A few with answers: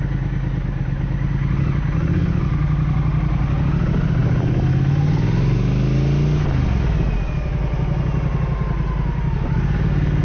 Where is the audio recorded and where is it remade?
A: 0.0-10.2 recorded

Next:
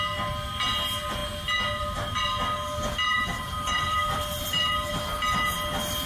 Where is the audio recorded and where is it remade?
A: 0.0-3.1 recorded; 3.1-4.9 remade; 4.9-6.1 recorded

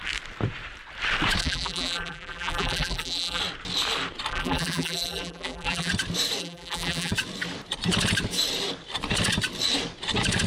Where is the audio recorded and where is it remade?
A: 0.0-1.4 recorded; 1.4-3.4 remade; 3.4-4.3 recorded; 4.3-5.9 remade; 5.9-6.4 recorded; 6.4-7.1 remade; 7.1-10.5 recorded

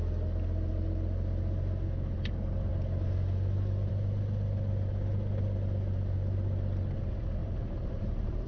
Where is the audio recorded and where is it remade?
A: 0.0-7.4 recorded; 7.4-8.5 remade

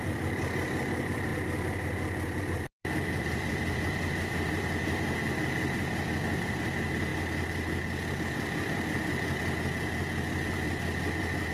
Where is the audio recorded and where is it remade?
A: 0.0-1.3 remade; 1.3-2.4 recorded; 2.4-7.1 remade; 7.1-8.2 recorded; 8.2-11.5 remade

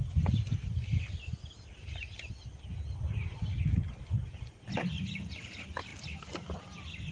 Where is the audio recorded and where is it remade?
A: 0.0-7.1 recorded

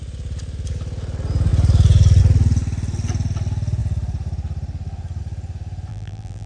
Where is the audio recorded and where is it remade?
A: 0.0-5.9 recorded; 5.9-6.5 remade